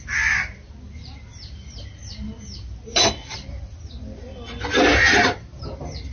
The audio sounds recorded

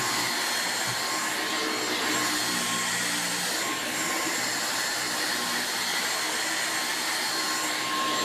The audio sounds recorded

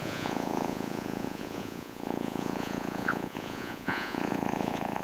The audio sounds remade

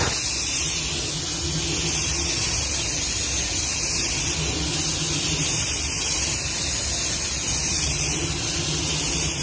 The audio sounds recorded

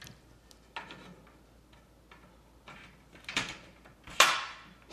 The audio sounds recorded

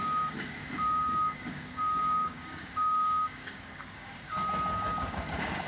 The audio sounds remade